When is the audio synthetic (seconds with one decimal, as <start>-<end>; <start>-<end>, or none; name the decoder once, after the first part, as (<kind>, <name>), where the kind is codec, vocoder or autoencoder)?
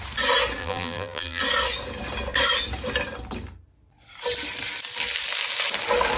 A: 0.6-1.4 (vocoder, BigVGAN v2)